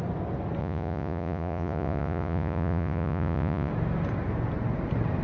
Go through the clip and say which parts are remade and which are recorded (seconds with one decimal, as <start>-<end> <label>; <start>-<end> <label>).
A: 0.0-0.6 recorded; 0.6-3.7 remade; 3.7-5.2 recorded